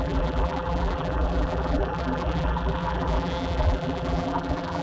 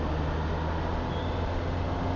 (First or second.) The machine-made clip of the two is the first